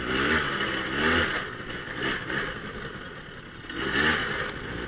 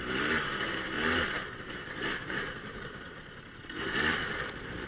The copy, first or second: second